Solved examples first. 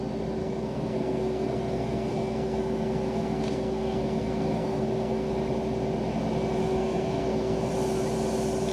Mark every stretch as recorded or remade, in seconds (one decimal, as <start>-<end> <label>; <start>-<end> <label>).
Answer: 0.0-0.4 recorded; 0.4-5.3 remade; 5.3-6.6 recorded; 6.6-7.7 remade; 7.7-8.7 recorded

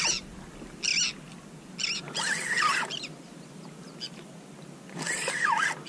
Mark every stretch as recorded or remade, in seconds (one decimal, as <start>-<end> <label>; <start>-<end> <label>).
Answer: 0.0-5.9 recorded

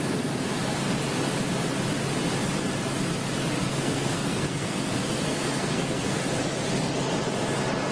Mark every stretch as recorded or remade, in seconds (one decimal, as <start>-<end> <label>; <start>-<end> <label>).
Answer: 0.0-3.6 recorded; 3.6-6.2 remade; 6.2-7.9 recorded

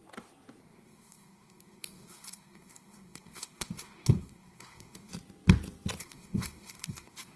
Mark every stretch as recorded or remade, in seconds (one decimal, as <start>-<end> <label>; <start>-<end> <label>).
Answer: 0.0-0.6 recorded; 0.6-5.1 remade; 5.1-6.0 recorded; 6.0-7.4 remade

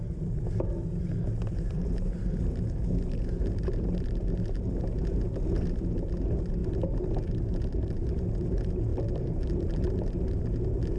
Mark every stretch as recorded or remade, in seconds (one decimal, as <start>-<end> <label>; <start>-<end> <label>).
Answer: 0.0-11.0 recorded

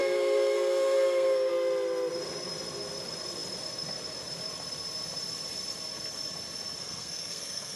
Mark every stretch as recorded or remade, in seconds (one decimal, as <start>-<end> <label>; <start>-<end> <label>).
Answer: 0.0-1.5 remade; 1.5-6.8 recorded; 6.8-7.8 remade